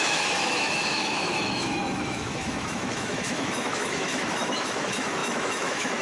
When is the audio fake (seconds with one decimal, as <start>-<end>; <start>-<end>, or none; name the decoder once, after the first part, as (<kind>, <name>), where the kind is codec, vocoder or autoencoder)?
0.0-6.0 (autoencoder, DAC-VAE)